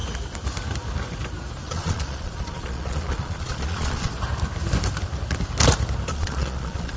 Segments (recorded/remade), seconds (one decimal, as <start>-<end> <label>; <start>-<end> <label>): 0.0-1.6 recorded; 1.6-4.1 remade; 4.1-6.1 recorded; 6.1-7.0 remade